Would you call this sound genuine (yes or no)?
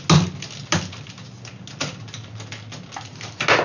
yes